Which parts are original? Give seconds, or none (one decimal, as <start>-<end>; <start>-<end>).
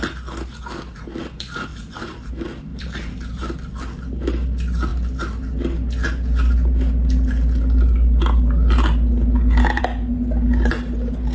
0.0-1.7; 2.3-2.7; 3.4-11.3